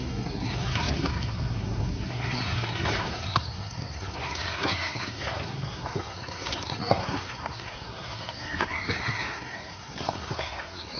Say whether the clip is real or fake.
fake